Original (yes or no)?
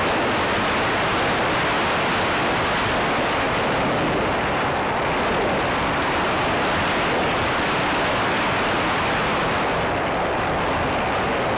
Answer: yes